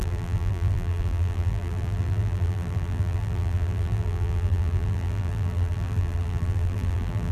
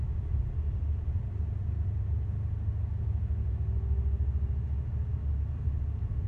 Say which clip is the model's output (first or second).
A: first